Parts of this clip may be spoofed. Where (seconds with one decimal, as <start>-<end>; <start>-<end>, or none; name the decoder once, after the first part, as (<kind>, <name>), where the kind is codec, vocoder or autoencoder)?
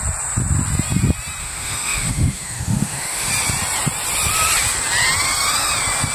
1.4-3.3 (autoencoder, DAC-VAE)